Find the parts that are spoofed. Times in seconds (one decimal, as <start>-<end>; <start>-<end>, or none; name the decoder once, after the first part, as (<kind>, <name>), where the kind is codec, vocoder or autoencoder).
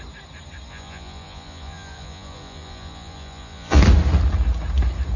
0.7-3.8 (vocoder, Vocos)